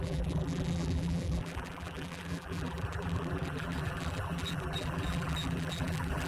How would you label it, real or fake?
fake